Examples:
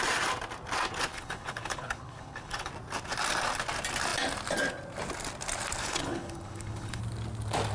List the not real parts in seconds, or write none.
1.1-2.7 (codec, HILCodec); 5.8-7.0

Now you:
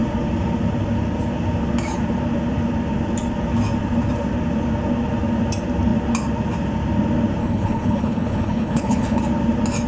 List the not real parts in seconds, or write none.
7.4-9.2 (codec, HILCodec)

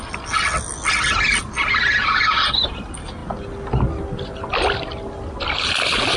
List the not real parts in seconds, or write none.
none

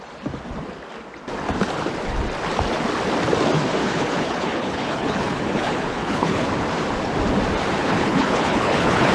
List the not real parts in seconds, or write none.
3.8-6.5 (codec, HILCodec); 7.8-9.1

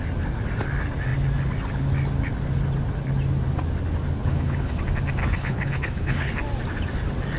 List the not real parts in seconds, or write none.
4.2-4.8 (codec, HILCodec); 5.2-6.3

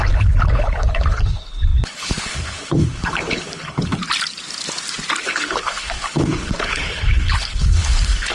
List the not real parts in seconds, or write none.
0.0-4.0 (codec, HILCodec); 5.2-8.3

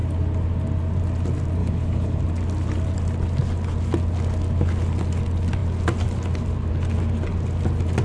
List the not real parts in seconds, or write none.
1.6-2.2 (codec, HILCodec)